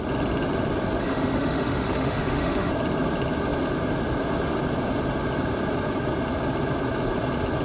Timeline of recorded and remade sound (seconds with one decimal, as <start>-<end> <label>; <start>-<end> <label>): 0.0-1.0 recorded; 1.0-2.7 remade; 2.7-7.6 recorded